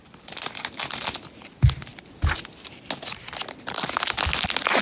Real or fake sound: real